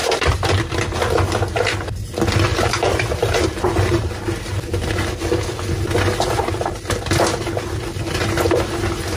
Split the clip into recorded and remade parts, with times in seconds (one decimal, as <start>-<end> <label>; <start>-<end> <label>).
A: 0.0-0.6 remade; 0.6-2.5 recorded; 2.5-4.1 remade; 4.1-9.2 recorded